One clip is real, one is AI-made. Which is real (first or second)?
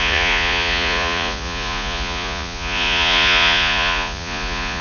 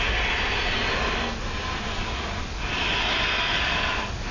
second